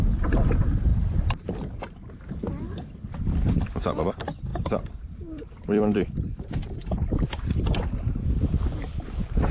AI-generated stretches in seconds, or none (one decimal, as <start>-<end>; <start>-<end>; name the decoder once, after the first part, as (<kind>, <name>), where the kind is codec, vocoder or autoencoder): 0.0-6.8 (vocoder, BigVGAN v2); 7.9-9.5